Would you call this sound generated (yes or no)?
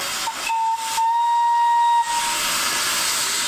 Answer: no